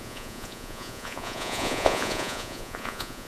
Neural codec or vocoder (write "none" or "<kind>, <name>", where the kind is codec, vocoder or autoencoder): vocoder, Vocos